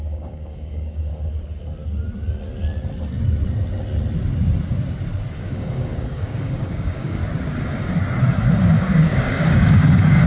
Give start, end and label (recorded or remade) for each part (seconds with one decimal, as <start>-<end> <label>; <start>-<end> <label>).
0.0-1.1 remade; 1.1-5.3 recorded; 5.3-7.2 remade; 7.2-8.4 recorded; 8.4-10.3 remade